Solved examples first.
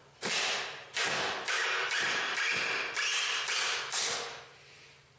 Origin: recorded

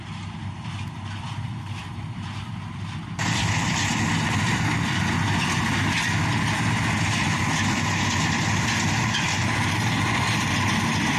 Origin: recorded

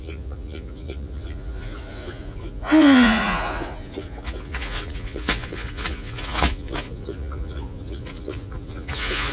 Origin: remade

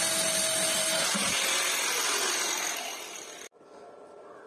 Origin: recorded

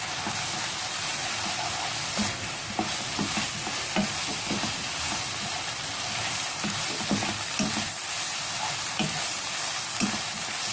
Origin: recorded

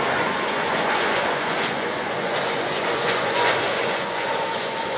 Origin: remade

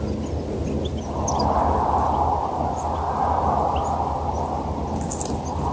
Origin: recorded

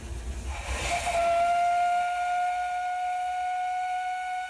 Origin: recorded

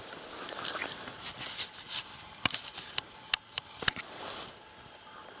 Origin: recorded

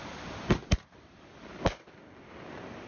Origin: recorded